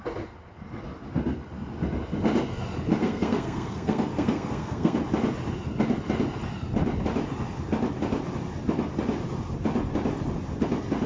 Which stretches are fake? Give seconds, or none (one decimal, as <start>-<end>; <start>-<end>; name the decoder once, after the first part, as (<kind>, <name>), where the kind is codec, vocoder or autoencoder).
3.0-5.0 (codec, SNAC)